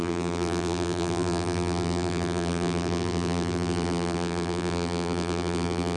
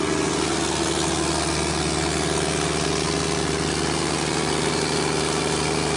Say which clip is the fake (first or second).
first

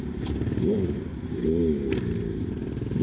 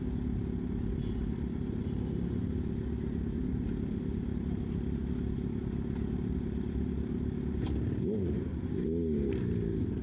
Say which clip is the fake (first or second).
first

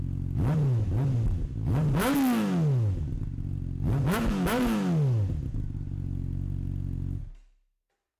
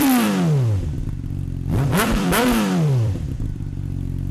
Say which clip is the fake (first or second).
second